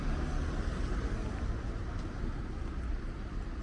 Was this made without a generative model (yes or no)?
yes